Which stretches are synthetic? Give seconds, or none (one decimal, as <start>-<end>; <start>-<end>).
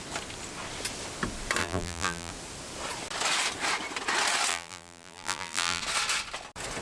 1.6-2.3; 4.5-5.8